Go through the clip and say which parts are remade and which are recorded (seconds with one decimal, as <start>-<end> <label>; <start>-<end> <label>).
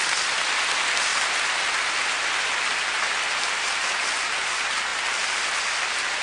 0.0-6.2 recorded